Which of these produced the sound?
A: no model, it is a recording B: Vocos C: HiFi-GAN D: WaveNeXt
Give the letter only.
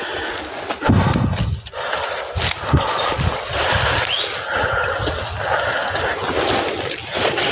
A